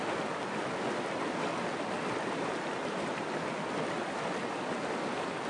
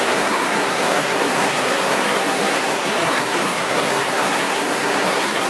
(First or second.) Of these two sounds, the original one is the first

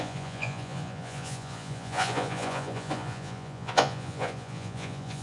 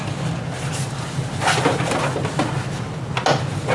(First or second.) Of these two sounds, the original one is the second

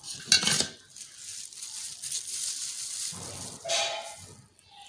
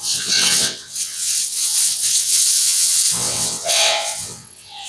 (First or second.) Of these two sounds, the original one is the first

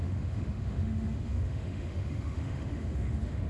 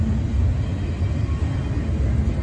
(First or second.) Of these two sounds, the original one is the second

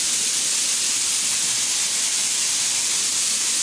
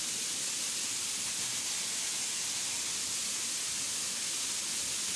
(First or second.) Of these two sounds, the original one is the second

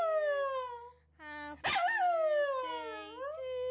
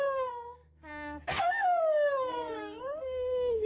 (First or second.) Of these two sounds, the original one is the first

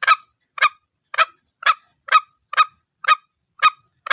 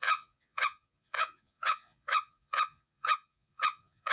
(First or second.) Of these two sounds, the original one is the first